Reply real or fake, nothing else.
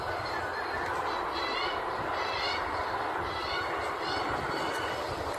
fake